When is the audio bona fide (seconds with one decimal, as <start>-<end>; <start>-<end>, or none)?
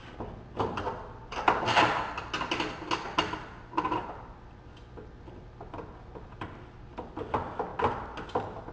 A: 0.0-8.7